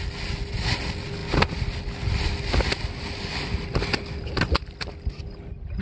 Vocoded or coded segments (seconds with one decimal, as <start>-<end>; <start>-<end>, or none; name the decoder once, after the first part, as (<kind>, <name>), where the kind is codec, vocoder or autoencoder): none